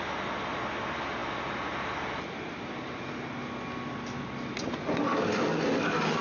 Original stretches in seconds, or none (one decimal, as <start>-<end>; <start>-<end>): 0.0-6.2